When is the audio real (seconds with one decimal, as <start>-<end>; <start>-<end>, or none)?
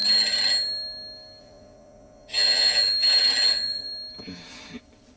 0.0-1.4; 2.8-3.5; 3.9-5.2